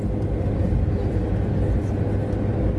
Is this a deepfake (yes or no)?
no